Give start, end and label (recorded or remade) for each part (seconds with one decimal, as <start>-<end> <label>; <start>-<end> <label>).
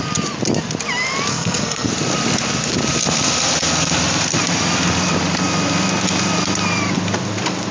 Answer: 0.0-1.3 recorded; 1.3-1.9 remade; 1.9-7.7 recorded